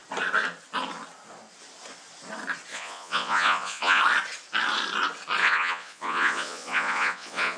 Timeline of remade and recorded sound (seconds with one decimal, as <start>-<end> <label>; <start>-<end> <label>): 0.0-2.7 recorded; 2.7-4.0 remade; 4.0-5.4 recorded; 5.4-7.6 remade